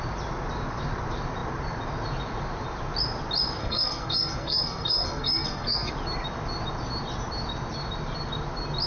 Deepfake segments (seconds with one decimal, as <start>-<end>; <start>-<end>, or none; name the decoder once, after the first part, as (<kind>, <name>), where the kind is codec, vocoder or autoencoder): 3.6-5.9 (codec, SNAC)